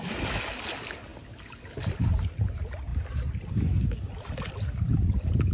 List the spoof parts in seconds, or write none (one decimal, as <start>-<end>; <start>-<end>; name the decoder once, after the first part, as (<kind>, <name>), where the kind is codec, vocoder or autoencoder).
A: none

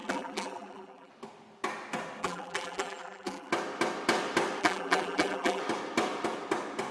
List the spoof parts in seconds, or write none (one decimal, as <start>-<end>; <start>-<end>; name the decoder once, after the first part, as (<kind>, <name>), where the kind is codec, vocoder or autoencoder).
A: 0.0-1.1 (vocoder, BigVGAN v2); 2.2-3.5; 4.6-5.6